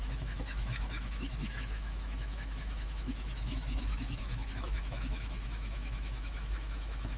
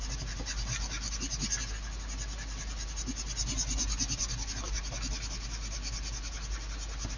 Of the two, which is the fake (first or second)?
first